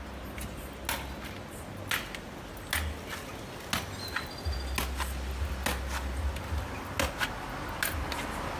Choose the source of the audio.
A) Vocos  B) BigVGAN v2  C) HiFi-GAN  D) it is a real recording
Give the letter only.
D